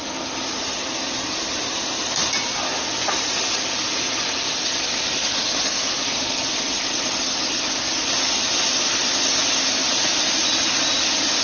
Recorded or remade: recorded